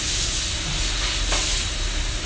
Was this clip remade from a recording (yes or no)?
no